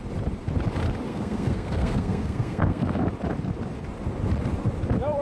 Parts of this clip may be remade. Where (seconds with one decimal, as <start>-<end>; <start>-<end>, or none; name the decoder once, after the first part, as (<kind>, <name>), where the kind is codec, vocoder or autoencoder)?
1.1-3.0 (codec, SNAC)